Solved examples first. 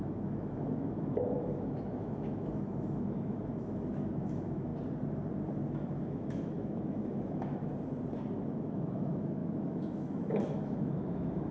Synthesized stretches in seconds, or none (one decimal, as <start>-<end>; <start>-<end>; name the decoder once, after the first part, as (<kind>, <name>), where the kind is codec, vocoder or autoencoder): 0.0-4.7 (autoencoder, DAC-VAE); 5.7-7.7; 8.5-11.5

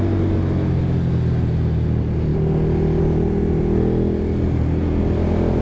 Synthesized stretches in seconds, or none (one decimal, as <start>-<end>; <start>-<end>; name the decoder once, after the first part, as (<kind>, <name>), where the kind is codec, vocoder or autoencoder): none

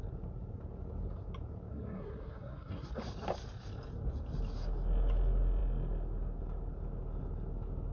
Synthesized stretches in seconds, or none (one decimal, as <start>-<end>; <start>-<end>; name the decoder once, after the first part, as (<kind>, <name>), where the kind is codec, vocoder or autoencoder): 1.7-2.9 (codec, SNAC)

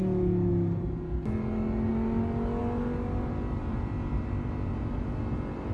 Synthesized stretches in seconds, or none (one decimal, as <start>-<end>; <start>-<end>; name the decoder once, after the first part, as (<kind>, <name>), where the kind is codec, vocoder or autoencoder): none

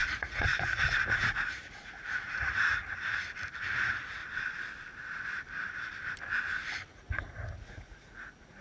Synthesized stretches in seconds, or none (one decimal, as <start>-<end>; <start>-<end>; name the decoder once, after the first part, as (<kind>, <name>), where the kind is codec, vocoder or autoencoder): 0.0-2.8 (vocoder, Vocos); 3.6-4.2; 6.9-8.6